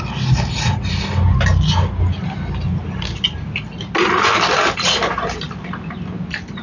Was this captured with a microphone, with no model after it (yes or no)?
yes